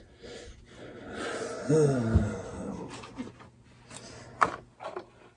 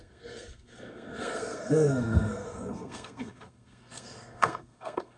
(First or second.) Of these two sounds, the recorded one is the first